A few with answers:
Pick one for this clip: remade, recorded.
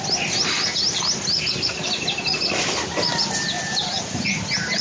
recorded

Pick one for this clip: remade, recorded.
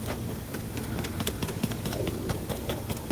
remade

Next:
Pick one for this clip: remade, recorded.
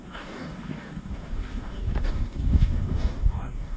remade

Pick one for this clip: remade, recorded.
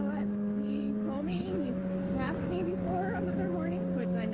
remade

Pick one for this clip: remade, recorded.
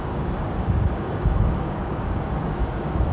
remade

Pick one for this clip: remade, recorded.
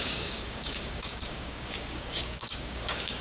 remade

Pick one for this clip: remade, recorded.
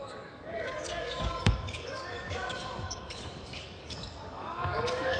remade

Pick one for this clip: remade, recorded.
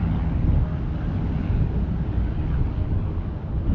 recorded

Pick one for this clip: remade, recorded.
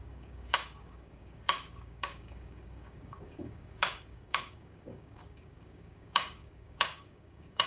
remade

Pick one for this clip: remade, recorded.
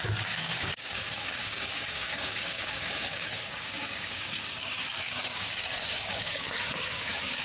remade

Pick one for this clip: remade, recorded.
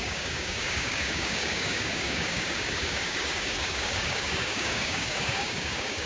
remade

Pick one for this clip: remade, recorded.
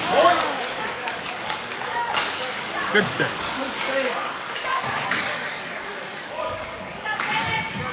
remade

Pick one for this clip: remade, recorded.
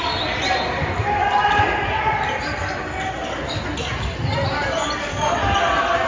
recorded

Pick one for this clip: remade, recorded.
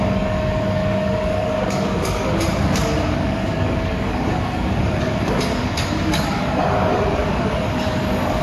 remade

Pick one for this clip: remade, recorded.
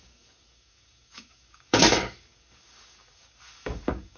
remade